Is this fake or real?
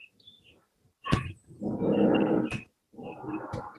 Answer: fake